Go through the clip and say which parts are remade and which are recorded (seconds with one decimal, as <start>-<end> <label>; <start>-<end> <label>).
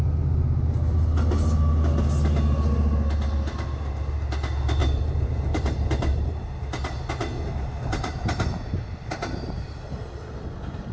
0.0-4.8 recorded; 4.8-6.4 remade; 6.4-10.9 recorded